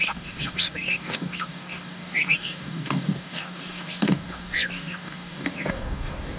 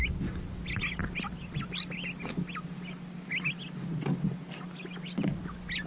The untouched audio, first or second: second